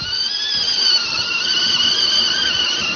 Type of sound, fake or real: real